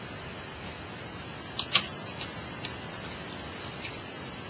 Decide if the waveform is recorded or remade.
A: recorded